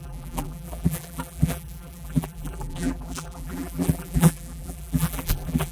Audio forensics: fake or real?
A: fake